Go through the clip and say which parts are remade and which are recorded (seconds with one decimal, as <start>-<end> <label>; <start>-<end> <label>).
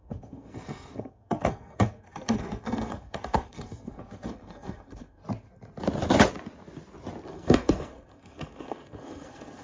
0.0-5.2 remade; 5.2-7.3 recorded; 7.3-9.6 remade